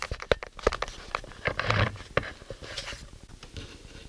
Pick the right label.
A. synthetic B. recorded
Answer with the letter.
B